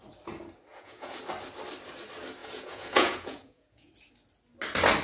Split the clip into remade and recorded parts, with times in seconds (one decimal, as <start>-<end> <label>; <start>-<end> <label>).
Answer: 0.0-0.7 recorded; 0.7-1.2 remade; 1.2-2.4 recorded; 2.4-3.9 remade; 3.9-5.0 recorded